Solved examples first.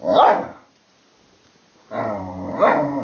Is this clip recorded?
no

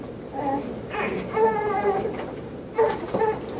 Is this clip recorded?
no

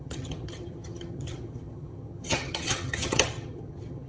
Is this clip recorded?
no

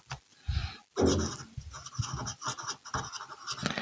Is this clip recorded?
yes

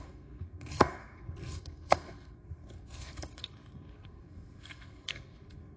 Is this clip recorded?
no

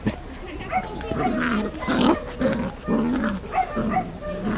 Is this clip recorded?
yes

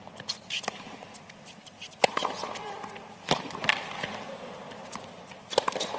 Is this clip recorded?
yes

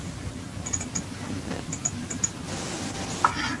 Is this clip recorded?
yes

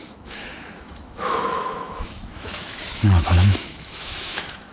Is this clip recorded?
no